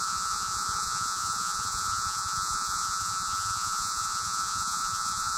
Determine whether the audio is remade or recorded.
remade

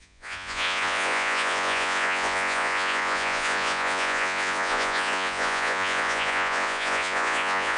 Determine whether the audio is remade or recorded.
remade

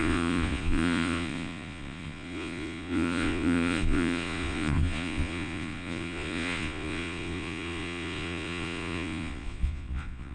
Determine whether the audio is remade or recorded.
remade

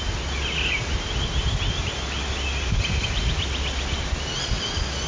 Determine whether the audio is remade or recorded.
recorded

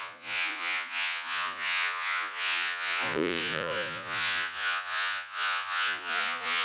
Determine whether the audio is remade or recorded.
remade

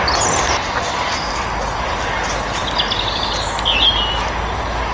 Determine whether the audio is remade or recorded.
recorded